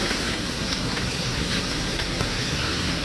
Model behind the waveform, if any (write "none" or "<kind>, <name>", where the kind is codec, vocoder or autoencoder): codec, SNAC